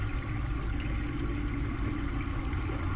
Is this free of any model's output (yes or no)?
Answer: yes